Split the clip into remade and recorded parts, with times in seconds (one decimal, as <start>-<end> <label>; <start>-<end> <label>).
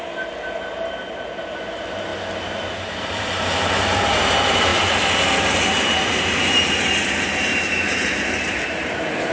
0.0-2.1 remade; 2.1-2.7 recorded; 2.7-9.3 remade